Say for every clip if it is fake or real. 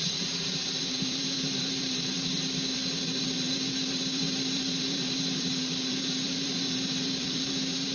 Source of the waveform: fake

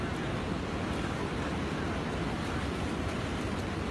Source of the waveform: fake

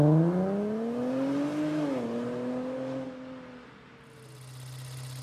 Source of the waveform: real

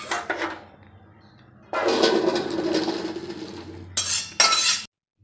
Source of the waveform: real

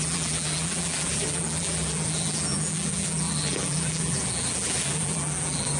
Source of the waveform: fake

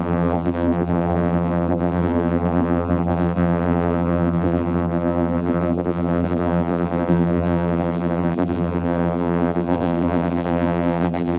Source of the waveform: fake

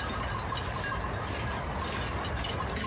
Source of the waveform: real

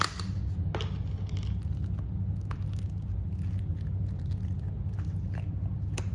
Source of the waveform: real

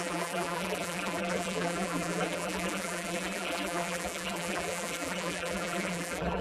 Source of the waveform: fake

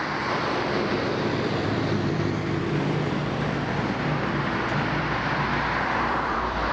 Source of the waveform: fake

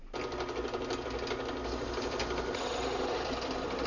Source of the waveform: real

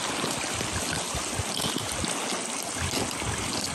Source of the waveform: real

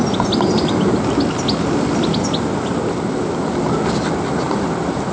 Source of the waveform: real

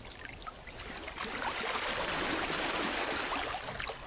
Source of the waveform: real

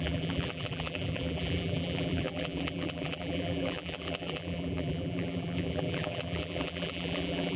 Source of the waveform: fake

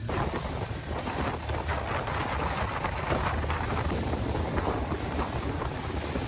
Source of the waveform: real